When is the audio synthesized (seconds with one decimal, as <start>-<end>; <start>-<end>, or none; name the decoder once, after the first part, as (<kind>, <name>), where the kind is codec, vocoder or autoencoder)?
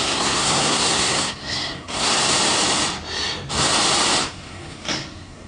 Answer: 0.0-2.2 (codec, SNAC); 4.2-5.5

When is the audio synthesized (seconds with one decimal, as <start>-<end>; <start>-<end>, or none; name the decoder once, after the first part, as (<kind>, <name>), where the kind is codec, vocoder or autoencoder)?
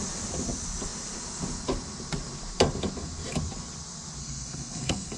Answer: 4.2-5.2 (codec, SNAC)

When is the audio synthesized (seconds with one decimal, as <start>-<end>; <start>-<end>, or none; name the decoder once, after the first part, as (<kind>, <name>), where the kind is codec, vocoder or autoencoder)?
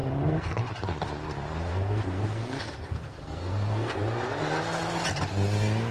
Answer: 0.0-0.6 (codec, SNAC); 1.7-4.0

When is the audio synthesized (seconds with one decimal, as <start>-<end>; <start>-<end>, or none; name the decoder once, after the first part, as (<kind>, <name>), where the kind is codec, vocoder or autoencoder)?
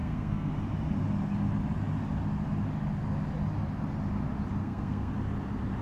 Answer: 0.0-0.5 (codec, SNAC); 4.6-5.1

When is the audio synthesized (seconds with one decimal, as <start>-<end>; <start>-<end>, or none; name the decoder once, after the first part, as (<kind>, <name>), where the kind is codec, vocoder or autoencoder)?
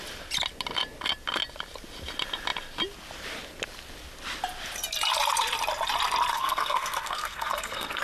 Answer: 6.3-8.0 (codec, SNAC)